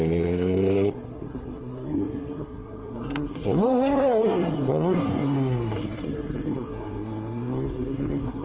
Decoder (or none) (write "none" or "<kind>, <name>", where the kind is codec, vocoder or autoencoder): codec, SNAC